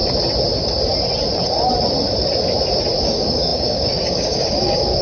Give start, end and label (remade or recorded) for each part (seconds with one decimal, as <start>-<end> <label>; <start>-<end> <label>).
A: 0.0-3.0 recorded; 3.0-5.0 remade